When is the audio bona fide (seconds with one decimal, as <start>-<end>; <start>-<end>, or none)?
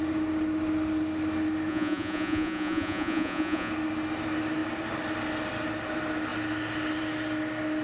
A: 0.0-1.7; 3.7-7.8